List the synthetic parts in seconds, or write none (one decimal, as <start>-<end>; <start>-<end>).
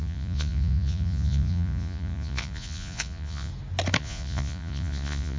0.0-3.5; 4.0-5.4